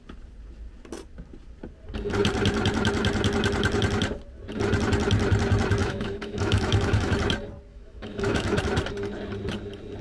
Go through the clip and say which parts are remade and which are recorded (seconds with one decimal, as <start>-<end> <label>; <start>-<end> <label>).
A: 0.0-5.8 recorded; 5.8-7.1 remade; 7.1-7.7 recorded; 7.7-8.6 remade; 8.6-10.0 recorded